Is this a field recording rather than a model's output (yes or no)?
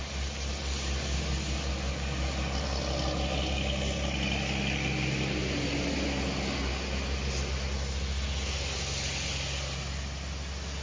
yes